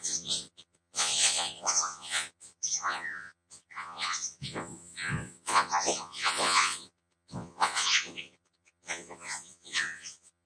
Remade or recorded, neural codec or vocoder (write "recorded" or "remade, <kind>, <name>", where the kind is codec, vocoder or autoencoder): remade, vocoder, Vocos